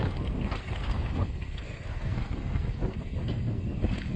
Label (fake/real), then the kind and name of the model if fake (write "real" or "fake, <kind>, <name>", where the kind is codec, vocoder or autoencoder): fake, codec, SNAC